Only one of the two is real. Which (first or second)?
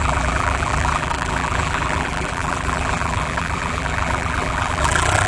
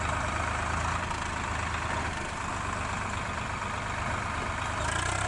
second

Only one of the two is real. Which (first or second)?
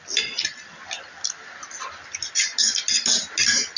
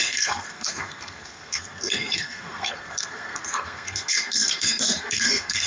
first